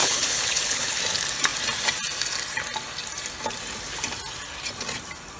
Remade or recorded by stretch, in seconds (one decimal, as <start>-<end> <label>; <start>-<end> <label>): 0.0-1.0 remade; 1.0-5.4 recorded